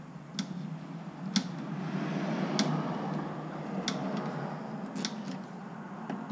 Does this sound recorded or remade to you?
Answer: recorded